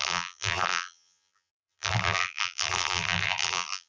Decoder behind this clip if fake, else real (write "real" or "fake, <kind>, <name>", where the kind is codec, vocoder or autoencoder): fake, vocoder, BigVGAN v2